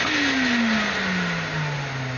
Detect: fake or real real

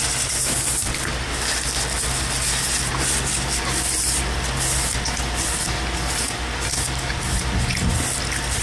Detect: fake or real real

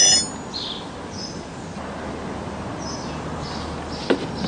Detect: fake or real real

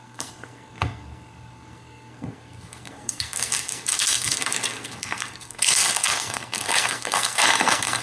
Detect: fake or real fake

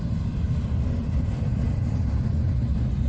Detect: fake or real real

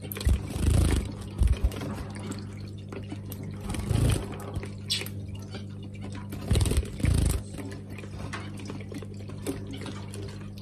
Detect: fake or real real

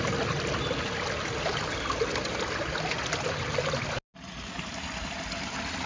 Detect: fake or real real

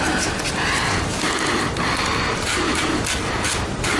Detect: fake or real real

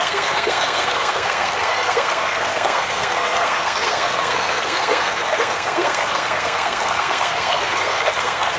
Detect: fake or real fake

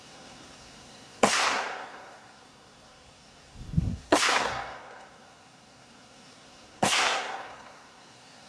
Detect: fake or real fake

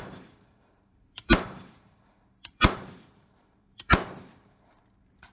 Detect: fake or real fake